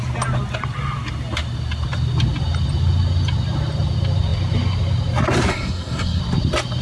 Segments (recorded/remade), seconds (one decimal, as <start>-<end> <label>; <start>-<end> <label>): 0.0-5.5 recorded; 5.5-6.2 remade; 6.2-6.8 recorded